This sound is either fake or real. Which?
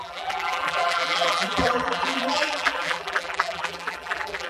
fake